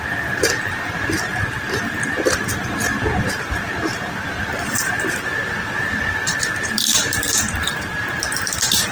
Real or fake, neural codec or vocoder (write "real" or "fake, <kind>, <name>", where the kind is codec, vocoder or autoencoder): fake, vocoder, BigVGAN v2